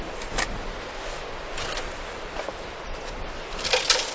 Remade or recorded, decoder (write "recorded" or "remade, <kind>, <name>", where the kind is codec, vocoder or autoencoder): recorded